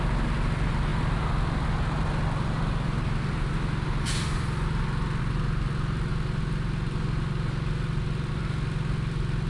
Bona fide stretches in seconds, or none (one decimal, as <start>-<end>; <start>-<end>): 0.0-9.5

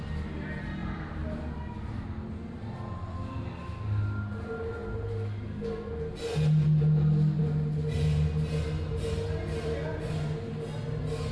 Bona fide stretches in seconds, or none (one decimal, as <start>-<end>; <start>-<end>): 0.0-0.8; 1.4-11.3

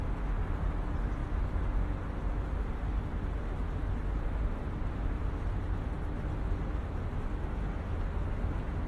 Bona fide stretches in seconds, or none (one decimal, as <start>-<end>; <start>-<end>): 0.0-8.9

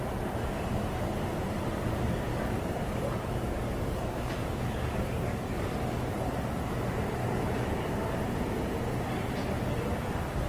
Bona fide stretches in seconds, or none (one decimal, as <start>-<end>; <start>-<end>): 0.0-2.3; 6.3-7.2; 8.1-10.5

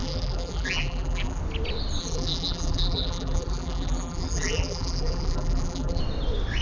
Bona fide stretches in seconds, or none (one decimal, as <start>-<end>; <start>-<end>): 1.4-2.0; 6.0-6.6

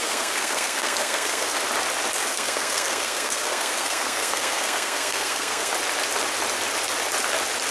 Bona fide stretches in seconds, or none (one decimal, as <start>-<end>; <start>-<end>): 1.6-2.2; 5.7-7.7

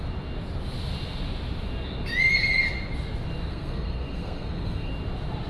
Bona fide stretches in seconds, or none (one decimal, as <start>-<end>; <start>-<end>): 0.0-3.5; 4.9-5.5

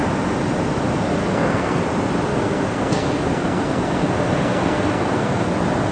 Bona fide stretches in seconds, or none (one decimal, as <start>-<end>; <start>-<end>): 0.0-1.2; 1.8-2.3; 5.5-5.9